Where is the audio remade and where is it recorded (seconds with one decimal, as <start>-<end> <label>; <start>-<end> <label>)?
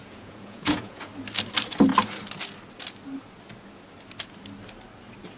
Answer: 0.0-1.1 remade; 1.1-5.4 recorded